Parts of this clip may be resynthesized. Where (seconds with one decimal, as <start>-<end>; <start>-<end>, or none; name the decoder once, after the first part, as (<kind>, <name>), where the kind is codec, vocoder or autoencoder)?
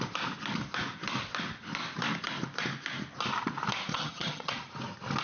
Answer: 3.9-4.5 (vocoder, HiFi-GAN)